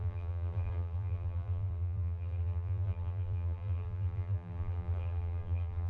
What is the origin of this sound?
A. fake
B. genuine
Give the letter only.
A